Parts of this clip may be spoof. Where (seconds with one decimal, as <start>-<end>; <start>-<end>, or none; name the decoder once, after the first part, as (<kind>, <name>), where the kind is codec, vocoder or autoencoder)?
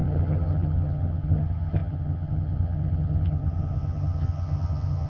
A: 0.0-5.1 (vocoder, HiFi-GAN)